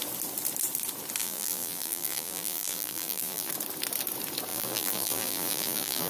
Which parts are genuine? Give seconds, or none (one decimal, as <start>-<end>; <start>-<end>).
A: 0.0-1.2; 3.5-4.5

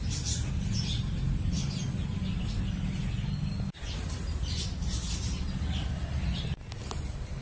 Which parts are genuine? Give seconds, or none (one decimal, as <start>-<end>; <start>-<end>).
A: 0.0-7.4

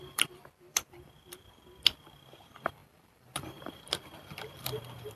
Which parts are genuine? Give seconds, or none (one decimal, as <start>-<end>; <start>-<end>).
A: none

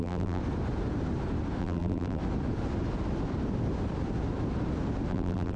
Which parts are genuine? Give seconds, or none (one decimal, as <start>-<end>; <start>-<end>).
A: 0.4-1.6; 2.2-5.1

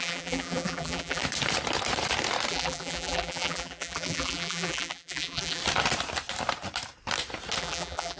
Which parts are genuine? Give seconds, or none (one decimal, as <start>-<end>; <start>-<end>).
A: 1.2-2.5; 5.6-7.6

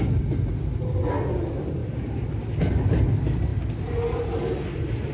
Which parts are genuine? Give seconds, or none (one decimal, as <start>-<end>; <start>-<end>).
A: 0.0-1.8; 2.7-5.1

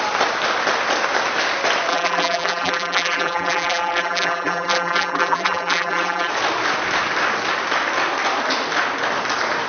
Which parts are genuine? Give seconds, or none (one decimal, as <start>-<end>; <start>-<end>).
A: 0.0-1.9; 6.3-9.7

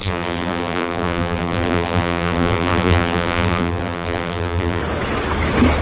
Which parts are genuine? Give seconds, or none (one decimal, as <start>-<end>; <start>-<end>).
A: 4.8-5.8